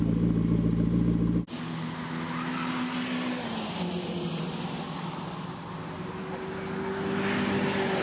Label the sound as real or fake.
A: real